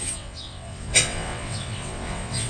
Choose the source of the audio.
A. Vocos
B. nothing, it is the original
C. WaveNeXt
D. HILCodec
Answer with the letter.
C